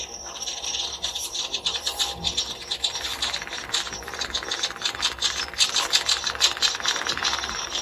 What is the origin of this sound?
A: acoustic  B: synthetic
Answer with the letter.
B